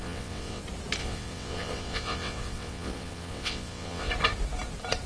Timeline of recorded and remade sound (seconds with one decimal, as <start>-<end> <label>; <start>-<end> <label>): 0.0-0.6 remade; 0.6-1.0 recorded; 1.0-4.1 remade; 4.1-5.1 recorded

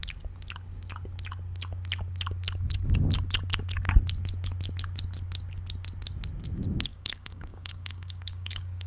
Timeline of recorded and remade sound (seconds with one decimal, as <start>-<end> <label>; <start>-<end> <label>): 0.0-6.9 recorded; 6.9-8.9 remade

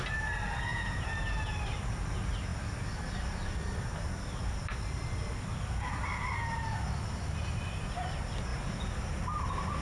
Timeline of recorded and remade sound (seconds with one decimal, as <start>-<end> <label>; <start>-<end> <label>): 0.0-0.7 recorded; 0.7-1.5 remade; 1.5-9.8 recorded

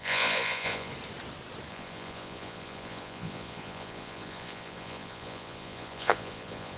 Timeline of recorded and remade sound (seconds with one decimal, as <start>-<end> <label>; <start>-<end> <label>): 0.0-0.9 remade; 0.9-1.7 recorded; 1.7-6.8 remade

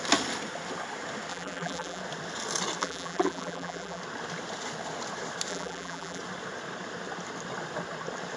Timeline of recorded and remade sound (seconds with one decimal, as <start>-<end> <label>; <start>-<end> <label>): 0.0-1.3 recorded; 1.3-2.0 remade; 2.0-2.8 recorded; 2.8-4.0 remade; 4.0-5.5 recorded; 5.5-6.2 remade; 6.2-8.4 recorded

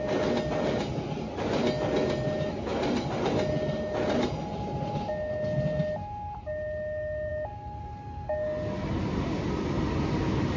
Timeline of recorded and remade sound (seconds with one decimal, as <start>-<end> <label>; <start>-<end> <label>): 0.0-10.6 recorded

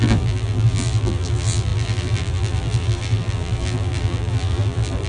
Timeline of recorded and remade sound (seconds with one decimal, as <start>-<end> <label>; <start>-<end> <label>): 0.0-5.1 remade

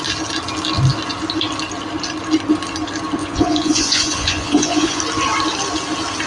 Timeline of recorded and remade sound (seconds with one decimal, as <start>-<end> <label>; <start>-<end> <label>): 0.0-3.2 recorded; 3.2-5.0 remade; 5.0-6.3 recorded